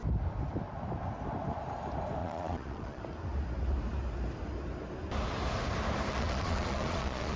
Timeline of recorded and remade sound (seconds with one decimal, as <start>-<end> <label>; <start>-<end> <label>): 0.0-2.2 recorded; 2.2-3.0 remade; 3.0-6.1 recorded; 6.1-7.4 remade